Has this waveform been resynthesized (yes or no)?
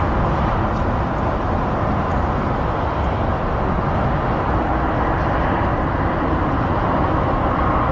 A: no